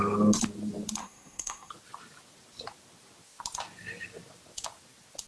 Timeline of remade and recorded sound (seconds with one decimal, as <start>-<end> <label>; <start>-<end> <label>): 0.0-1.0 recorded; 1.0-1.7 remade; 1.7-5.3 recorded